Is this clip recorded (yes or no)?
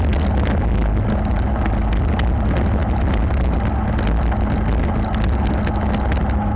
yes